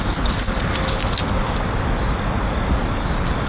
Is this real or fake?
real